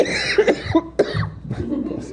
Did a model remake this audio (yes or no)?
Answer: no